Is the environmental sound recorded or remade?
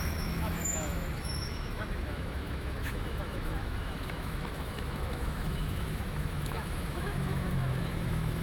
remade